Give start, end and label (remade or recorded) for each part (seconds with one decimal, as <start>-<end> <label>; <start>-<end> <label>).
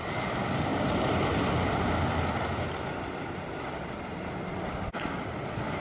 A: 0.0-5.8 recorded